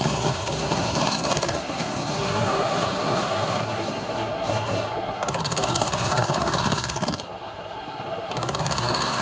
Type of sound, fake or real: fake